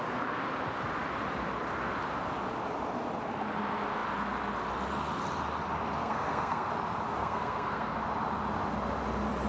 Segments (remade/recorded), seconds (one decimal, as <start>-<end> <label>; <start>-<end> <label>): 0.0-6.0 recorded; 6.0-6.7 remade; 6.7-7.2 recorded; 7.2-7.9 remade; 7.9-9.5 recorded

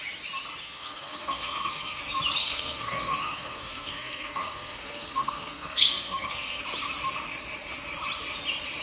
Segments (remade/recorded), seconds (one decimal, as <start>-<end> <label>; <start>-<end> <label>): 0.0-0.6 recorded; 0.6-2.0 remade; 2.0-2.4 recorded; 2.4-6.6 remade; 6.6-8.8 recorded